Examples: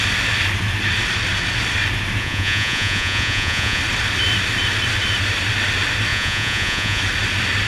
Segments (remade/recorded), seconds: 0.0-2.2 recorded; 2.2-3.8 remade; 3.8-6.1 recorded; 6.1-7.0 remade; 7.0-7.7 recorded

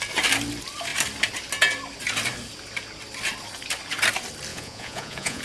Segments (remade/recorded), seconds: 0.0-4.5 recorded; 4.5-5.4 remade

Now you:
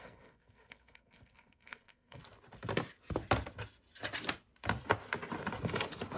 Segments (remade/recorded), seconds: 0.0-2.2 remade; 2.2-6.2 recorded

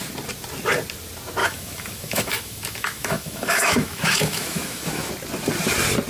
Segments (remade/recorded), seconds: 0.0-1.4 recorded; 1.4-5.1 remade; 5.1-6.1 recorded